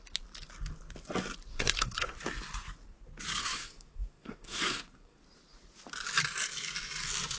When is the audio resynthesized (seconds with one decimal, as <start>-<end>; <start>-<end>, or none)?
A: 1.5-2.2; 3.4-5.2